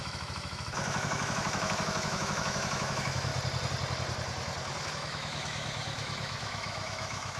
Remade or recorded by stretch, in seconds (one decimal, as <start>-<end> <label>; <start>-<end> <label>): 0.0-3.3 remade; 3.3-4.9 recorded; 4.9-7.4 remade